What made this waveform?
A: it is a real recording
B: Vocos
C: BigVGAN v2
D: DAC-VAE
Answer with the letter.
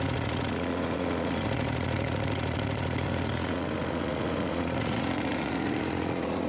B